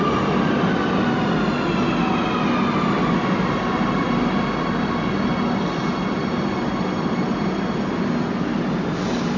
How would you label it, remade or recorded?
recorded